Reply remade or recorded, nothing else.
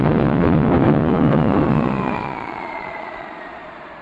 remade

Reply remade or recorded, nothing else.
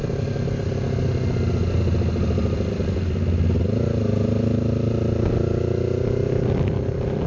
recorded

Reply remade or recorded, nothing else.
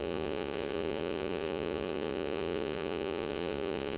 remade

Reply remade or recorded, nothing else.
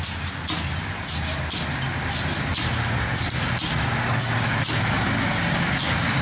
recorded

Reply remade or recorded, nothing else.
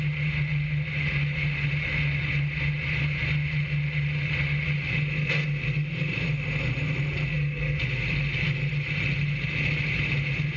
recorded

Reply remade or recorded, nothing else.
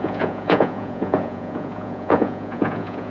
remade